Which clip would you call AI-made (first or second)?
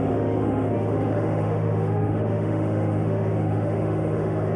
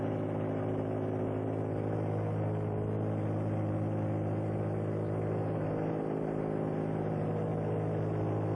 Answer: first